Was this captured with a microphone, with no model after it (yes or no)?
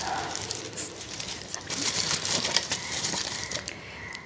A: no